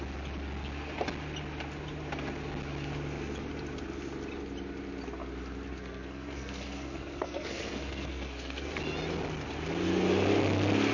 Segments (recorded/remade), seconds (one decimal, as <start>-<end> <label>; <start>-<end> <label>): 0.0-5.7 recorded; 5.7-8.8 remade; 8.8-10.9 recorded